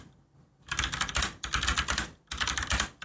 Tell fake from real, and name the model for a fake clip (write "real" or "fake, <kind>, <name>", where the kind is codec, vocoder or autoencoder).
real